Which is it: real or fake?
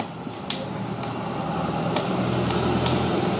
real